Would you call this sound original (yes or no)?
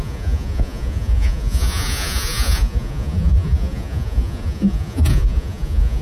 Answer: no